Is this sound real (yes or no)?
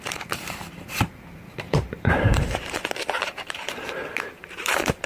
no